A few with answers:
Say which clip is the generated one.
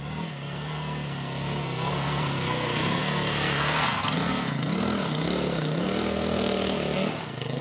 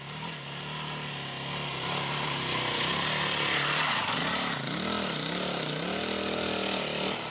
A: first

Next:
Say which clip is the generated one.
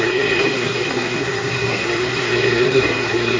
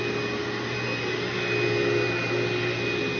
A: first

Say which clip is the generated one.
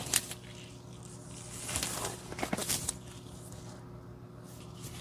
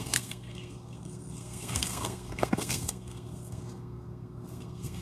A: second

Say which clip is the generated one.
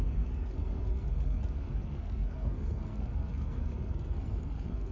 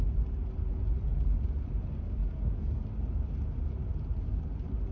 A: first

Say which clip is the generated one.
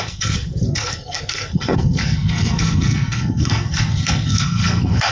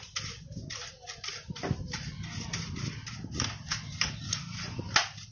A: first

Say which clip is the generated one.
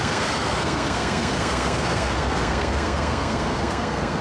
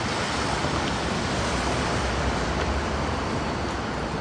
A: first